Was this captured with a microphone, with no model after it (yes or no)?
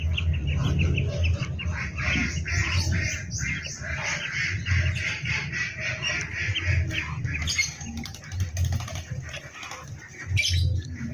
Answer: yes